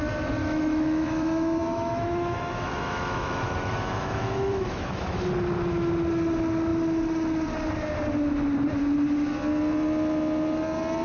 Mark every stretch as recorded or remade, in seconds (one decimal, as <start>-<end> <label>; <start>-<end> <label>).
0.0-0.4 recorded; 0.4-5.2 remade; 5.2-11.0 recorded